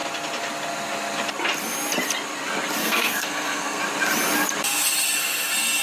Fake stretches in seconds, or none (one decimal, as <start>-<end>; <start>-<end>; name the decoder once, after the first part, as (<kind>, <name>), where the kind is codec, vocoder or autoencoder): 2.8-3.8 (codec, SNAC)